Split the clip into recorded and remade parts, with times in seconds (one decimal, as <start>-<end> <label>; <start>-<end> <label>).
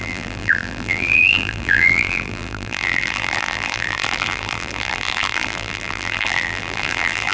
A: 0.0-7.3 remade